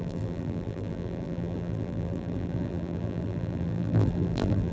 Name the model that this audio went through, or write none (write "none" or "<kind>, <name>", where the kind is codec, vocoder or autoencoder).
vocoder, BigVGAN v2